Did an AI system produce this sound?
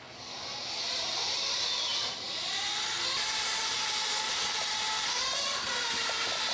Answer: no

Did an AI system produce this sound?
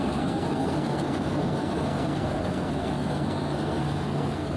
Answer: yes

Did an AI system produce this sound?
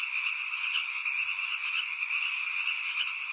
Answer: yes